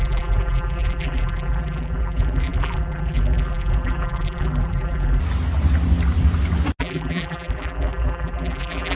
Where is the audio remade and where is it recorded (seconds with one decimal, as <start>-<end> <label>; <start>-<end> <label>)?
0.0-5.2 remade; 5.2-6.8 recorded; 6.8-9.0 remade